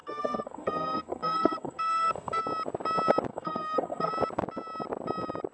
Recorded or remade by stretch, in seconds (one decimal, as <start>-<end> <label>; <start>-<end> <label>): 0.0-2.4 remade; 2.4-3.3 recorded; 3.3-4.1 remade; 4.1-5.5 recorded